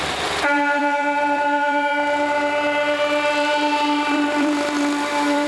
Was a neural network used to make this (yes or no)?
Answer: yes